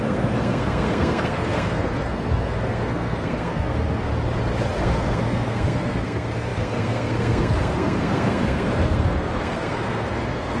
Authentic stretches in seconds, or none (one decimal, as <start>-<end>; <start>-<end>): 4.1-4.8